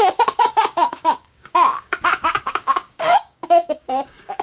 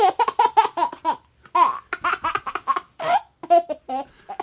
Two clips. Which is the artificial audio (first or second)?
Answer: first